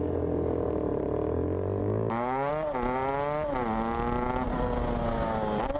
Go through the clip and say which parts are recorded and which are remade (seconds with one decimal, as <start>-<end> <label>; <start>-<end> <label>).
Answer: 0.0-1.8 recorded; 1.8-2.5 remade; 2.5-5.8 recorded